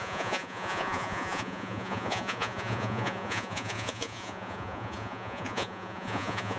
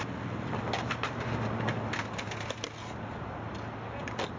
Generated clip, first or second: first